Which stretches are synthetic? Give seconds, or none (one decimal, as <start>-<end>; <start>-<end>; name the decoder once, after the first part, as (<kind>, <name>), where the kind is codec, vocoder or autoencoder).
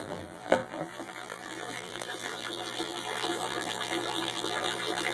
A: 0.0-5.1 (vocoder, BigVGAN v2)